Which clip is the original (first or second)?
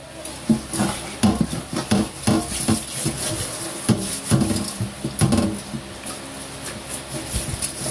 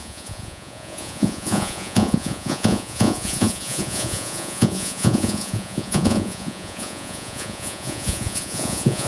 first